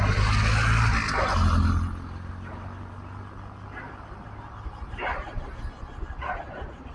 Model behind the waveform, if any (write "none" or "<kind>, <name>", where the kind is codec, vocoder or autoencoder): none